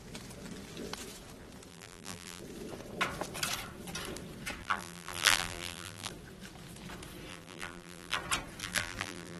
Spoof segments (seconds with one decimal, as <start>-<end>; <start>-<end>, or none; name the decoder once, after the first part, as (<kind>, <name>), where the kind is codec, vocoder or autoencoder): 1.7-2.4 (vocoder, BigVGAN v2); 4.6-6.1; 7.3-8.2; 8.6-9.4